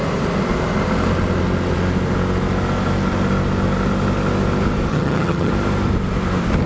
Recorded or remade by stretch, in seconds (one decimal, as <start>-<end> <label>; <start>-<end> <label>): 0.0-4.9 recorded; 4.9-5.5 remade; 5.5-6.7 recorded